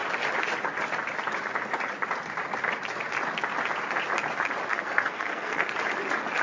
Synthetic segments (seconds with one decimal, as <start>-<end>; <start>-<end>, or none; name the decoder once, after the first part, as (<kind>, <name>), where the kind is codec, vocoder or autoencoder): 4.7-5.7 (codec, SNAC)